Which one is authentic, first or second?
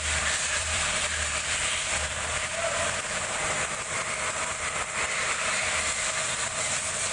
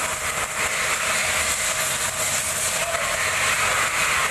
second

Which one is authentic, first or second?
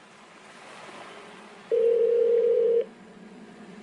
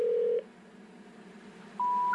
second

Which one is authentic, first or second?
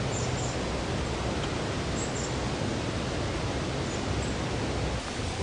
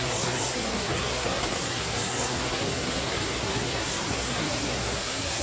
first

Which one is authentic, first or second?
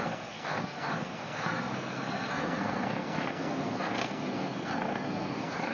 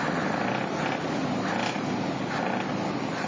second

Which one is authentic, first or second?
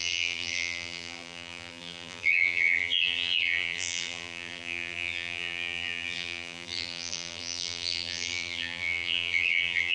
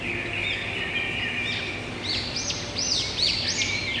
second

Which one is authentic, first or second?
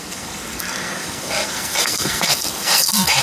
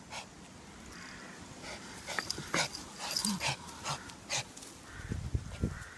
second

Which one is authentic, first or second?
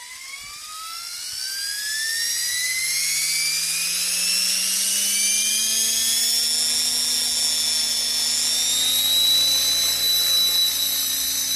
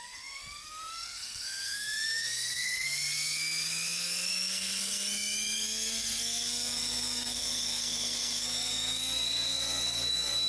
first